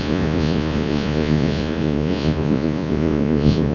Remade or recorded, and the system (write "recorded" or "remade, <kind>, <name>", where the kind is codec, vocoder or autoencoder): remade, vocoder, Vocos